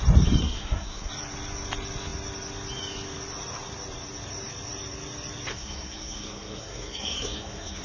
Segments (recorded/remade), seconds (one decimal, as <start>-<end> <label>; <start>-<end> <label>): 0.0-0.4 recorded; 0.4-1.1 remade; 1.1-5.5 recorded; 5.5-7.8 remade